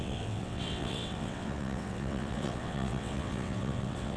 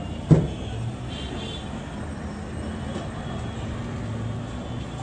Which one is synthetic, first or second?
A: first